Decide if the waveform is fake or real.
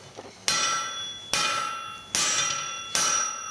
real